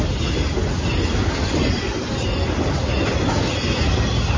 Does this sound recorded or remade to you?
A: recorded